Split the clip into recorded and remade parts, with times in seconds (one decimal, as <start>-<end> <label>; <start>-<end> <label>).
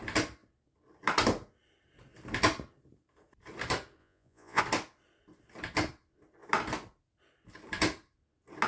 0.0-4.0 recorded; 4.0-4.6 remade; 4.6-8.7 recorded